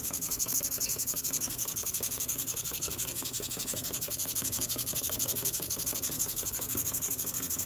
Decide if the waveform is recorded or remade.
remade